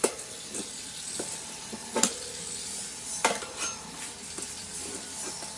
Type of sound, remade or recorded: remade